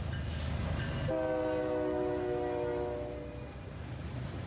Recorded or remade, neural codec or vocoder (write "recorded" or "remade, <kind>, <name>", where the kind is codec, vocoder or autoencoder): recorded